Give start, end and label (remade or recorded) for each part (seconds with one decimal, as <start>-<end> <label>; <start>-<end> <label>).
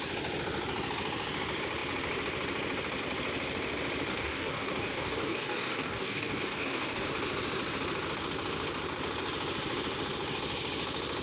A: 0.0-4.1 recorded; 4.1-7.1 remade; 7.1-11.2 recorded